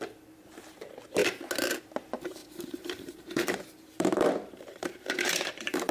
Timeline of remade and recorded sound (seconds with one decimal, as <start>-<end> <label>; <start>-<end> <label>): 0.0-2.4 recorded; 2.4-5.9 remade